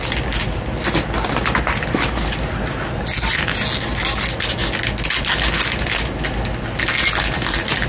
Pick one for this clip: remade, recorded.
recorded